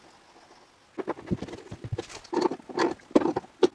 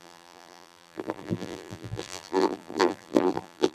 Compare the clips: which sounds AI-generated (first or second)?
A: second